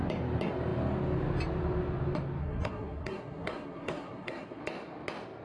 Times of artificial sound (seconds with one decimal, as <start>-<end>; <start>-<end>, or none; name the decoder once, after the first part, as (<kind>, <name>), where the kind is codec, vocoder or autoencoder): 2.4-4.6 (codec, SNAC)